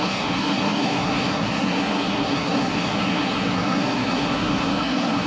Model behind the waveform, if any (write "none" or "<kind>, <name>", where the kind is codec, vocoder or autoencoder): codec, SNAC